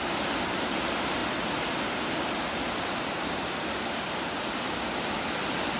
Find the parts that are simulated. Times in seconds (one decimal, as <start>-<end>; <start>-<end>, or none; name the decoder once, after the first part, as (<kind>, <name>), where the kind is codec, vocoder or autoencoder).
none